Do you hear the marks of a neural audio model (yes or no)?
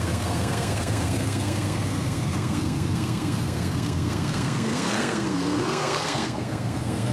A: yes